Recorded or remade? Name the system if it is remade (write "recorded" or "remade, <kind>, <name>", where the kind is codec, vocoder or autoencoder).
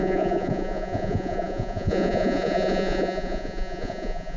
remade, vocoder, Vocos